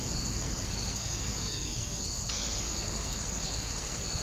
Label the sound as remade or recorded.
remade